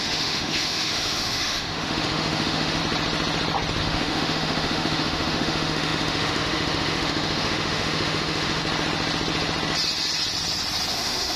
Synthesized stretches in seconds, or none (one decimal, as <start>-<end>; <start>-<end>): 0.0-2.8; 3.8-8.6; 10.9-11.4